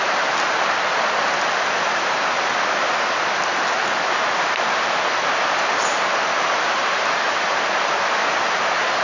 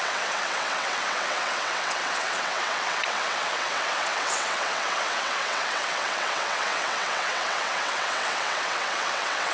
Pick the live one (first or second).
first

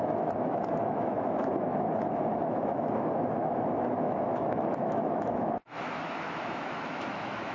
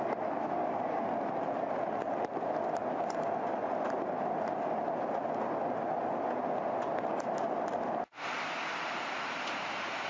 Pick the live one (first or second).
second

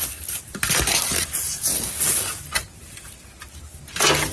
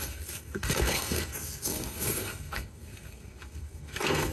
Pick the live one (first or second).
first